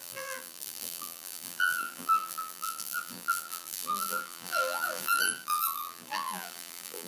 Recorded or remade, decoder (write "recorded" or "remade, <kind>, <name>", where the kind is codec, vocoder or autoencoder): remade, vocoder, BigVGAN v2